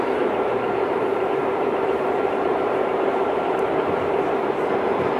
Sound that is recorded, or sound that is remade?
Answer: remade